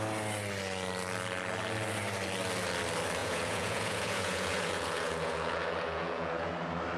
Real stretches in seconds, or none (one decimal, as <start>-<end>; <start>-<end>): 0.0-3.2; 6.5-7.0